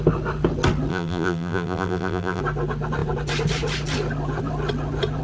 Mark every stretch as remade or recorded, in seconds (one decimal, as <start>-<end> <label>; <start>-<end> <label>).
0.0-0.9 recorded; 0.9-2.4 remade; 2.4-5.2 recorded